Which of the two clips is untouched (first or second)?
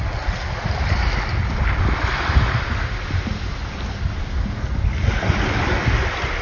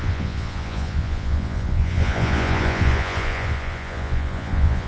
first